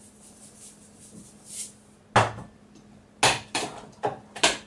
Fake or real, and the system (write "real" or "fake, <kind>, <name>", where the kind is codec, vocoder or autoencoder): real